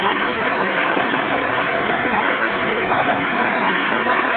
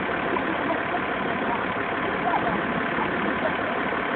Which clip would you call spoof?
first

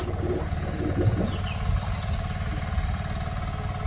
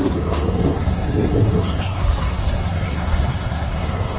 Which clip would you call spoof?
second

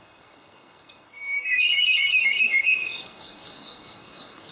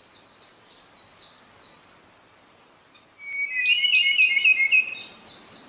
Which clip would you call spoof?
first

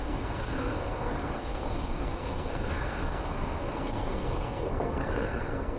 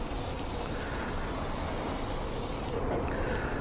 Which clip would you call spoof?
first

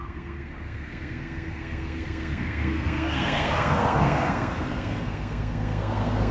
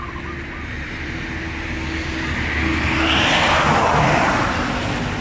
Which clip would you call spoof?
first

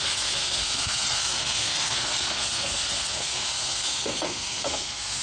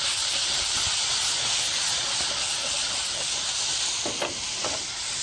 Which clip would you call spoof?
first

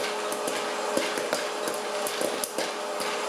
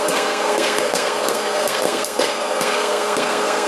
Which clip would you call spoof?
second